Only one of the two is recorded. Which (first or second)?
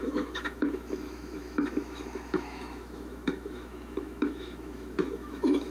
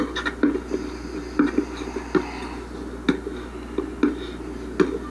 second